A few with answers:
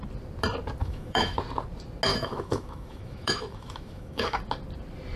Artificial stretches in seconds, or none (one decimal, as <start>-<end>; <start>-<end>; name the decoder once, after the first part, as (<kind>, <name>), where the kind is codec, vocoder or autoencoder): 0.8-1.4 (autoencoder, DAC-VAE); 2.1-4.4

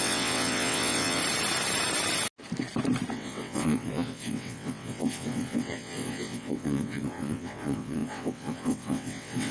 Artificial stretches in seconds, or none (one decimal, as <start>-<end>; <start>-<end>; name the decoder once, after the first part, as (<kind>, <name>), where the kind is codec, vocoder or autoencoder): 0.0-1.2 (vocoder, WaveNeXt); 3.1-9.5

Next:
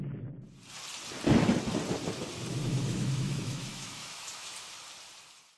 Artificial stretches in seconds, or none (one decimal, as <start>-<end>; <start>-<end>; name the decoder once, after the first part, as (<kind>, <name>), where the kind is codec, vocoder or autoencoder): 2.5-4.5 (autoencoder, DAC-VAE)

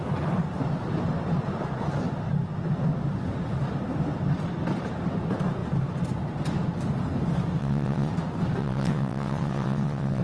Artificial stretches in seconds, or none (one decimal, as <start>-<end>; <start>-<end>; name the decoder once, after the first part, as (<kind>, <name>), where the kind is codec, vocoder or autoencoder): 7.6-8.1 (vocoder, WaveNeXt); 8.6-10.2

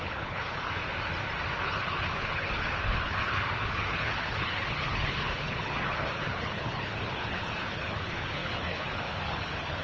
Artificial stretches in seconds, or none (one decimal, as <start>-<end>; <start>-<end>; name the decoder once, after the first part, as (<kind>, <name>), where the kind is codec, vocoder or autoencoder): 0.0-0.8 (codec, HILCodec); 1.6-9.8

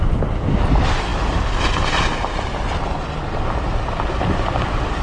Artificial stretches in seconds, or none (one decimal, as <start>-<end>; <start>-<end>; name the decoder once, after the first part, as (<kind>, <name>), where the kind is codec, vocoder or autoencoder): none

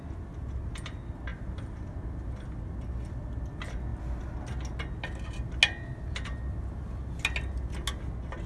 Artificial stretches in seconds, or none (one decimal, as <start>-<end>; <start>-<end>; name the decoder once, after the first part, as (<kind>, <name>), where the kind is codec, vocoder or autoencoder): none